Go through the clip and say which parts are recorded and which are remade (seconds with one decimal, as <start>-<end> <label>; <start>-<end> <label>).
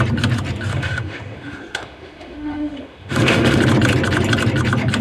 0.0-0.7 recorded; 0.7-3.6 remade; 3.6-5.0 recorded